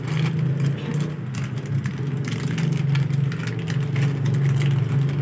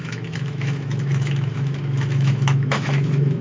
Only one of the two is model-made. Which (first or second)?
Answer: second